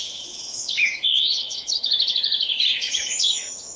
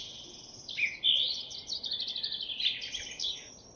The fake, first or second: first